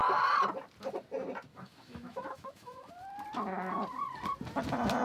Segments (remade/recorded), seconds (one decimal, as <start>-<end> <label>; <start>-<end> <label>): 0.0-1.5 recorded; 1.5-2.9 remade; 2.9-5.0 recorded